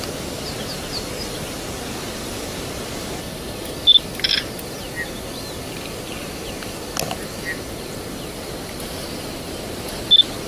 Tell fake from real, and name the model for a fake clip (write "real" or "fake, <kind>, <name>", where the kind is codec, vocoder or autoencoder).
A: real